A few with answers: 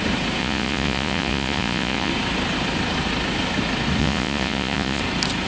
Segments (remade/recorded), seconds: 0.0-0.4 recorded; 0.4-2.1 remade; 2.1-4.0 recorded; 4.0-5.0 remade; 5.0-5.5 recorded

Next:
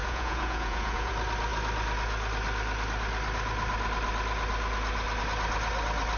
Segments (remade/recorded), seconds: 0.0-1.1 remade; 1.1-6.2 recorded

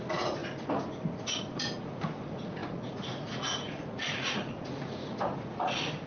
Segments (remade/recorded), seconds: 0.0-0.4 remade; 0.4-1.1 recorded; 1.1-6.1 remade

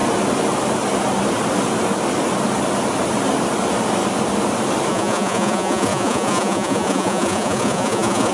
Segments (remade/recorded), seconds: 0.0-4.9 recorded; 4.9-8.3 remade

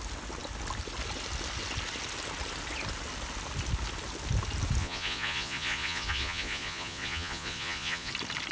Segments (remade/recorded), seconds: 0.0-4.8 recorded; 4.8-8.1 remade; 8.1-8.5 recorded